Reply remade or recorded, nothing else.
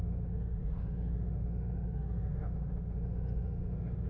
remade